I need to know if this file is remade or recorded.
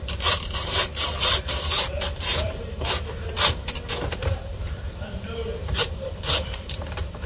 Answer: remade